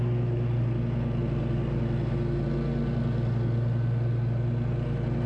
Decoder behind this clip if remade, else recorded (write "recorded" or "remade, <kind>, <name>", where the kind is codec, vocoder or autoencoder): recorded